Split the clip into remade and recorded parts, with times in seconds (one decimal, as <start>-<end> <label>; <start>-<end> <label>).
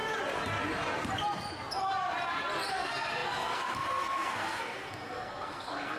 0.0-2.7 recorded; 2.7-6.0 remade